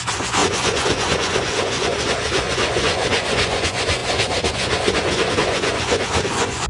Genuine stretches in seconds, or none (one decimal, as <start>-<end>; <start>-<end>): none